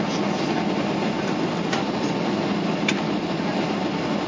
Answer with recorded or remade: recorded